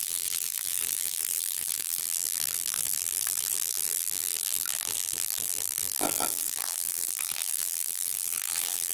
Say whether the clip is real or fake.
fake